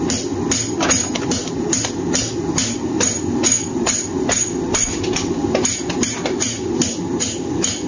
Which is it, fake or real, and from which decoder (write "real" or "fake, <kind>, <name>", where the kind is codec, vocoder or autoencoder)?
real